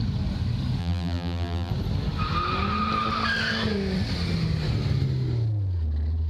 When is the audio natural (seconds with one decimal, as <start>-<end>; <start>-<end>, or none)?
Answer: 0.0-0.8; 1.7-6.3